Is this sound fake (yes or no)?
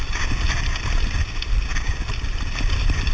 no